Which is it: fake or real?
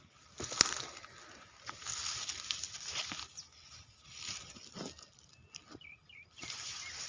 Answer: real